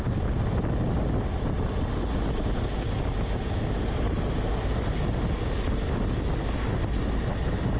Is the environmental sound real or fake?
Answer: real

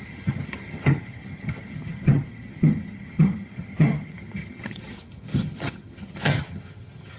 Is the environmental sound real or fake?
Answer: fake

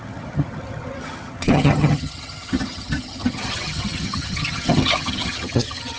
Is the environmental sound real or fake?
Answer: fake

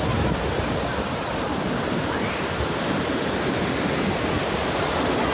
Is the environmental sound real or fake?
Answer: real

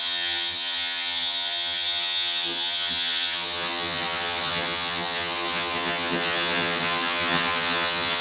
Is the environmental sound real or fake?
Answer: fake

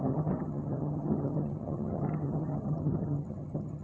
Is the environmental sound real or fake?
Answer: fake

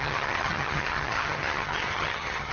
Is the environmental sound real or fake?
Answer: fake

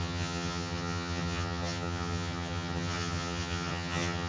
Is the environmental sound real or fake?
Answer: fake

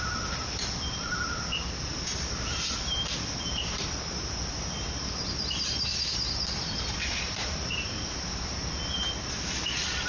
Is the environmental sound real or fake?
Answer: real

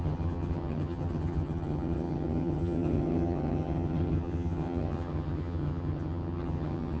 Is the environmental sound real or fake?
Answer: fake